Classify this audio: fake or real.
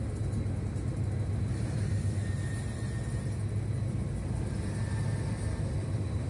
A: real